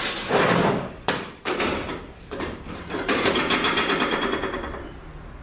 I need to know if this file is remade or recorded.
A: remade